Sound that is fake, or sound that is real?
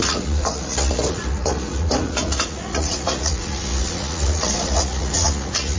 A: fake